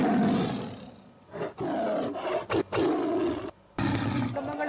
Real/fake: real